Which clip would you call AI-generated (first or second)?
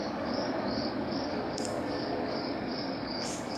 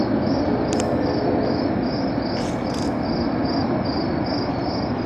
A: first